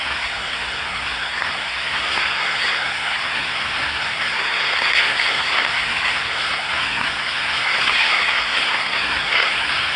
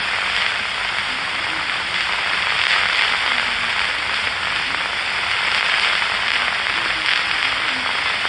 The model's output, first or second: first